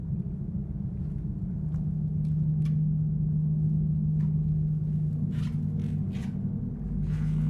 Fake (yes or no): no